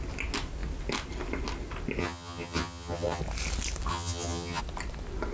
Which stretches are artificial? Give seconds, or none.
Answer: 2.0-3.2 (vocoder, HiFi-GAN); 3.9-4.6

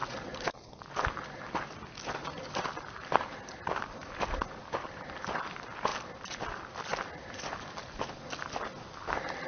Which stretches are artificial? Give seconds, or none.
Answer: none

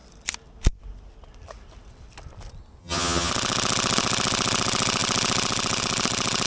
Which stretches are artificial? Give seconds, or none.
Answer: 2.8-3.3 (vocoder, HiFi-GAN)

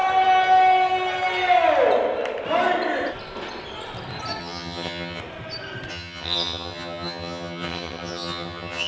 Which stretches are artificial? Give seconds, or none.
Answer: 4.4-5.2 (vocoder, HiFi-GAN); 5.9-8.9